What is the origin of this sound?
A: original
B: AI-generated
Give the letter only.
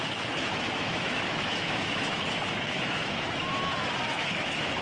B